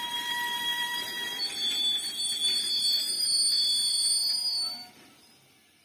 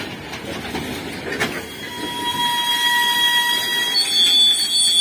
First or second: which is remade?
first